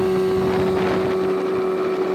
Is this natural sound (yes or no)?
yes